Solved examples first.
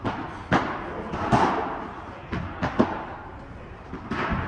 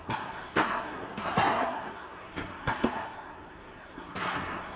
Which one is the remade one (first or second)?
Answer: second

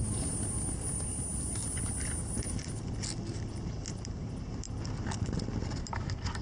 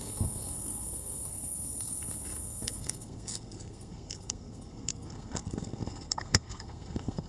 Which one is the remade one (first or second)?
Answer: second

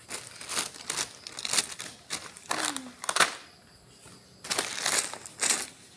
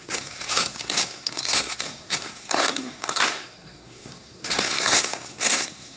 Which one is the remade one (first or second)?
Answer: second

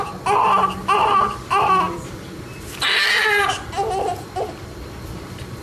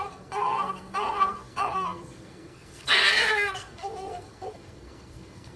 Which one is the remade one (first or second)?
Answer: second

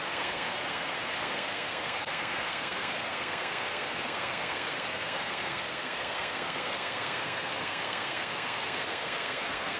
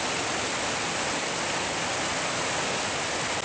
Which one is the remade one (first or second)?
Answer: first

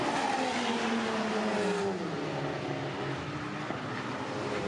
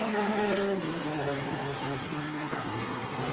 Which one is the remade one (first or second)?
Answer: second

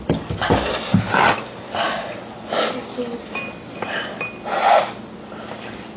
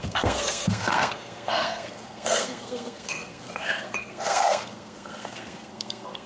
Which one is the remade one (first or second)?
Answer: second